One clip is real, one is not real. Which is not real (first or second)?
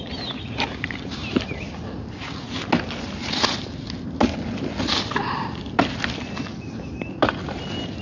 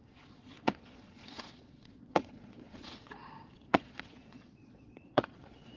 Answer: second